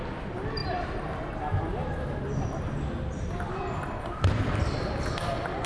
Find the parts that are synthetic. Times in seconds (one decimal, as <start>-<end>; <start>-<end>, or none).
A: none